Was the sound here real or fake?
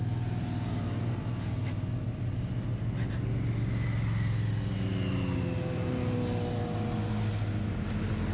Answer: real